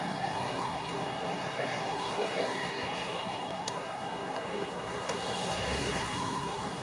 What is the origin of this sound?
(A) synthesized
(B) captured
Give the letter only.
A